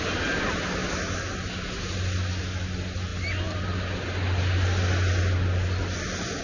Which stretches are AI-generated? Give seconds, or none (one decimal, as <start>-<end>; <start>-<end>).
none